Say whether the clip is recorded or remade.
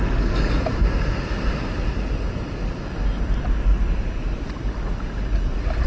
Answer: recorded